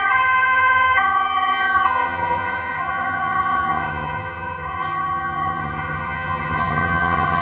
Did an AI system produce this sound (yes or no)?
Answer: yes